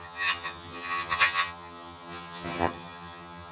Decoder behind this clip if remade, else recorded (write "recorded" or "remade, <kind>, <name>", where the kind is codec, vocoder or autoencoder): remade, vocoder, HiFi-GAN